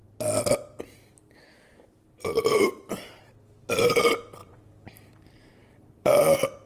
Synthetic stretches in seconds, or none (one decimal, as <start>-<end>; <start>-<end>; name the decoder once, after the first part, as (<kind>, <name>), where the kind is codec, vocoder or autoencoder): 4.4-6.1 (vocoder, BigVGAN v2)